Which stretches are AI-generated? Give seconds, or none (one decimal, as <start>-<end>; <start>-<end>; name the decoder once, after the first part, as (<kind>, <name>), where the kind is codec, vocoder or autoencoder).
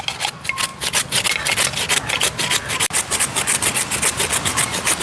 none